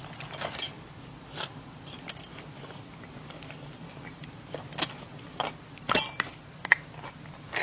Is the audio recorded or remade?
recorded